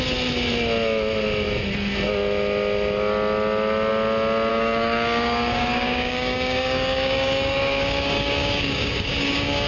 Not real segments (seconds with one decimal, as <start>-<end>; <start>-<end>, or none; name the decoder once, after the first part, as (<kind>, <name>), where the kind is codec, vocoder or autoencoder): 4.5-9.7 (codec, DAC)